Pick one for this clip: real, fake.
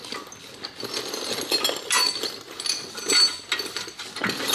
real